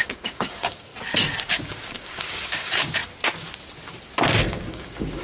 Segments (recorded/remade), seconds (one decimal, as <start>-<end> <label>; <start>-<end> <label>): 0.0-0.9 remade; 0.9-1.5 recorded; 1.5-3.0 remade; 3.0-4.4 recorded; 4.4-5.2 remade